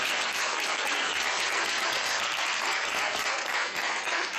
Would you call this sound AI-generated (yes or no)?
yes